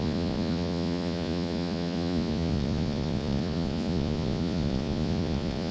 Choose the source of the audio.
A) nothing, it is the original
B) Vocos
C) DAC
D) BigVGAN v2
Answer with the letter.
B